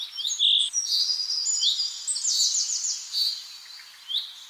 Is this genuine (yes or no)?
yes